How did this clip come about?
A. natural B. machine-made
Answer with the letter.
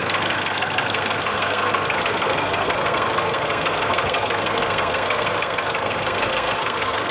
B